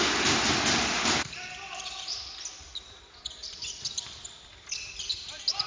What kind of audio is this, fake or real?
real